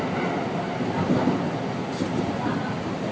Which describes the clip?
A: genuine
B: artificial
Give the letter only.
A